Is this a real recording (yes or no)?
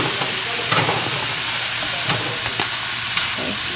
yes